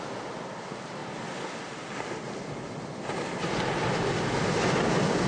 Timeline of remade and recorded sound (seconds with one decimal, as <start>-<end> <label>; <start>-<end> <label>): 0.0-5.3 recorded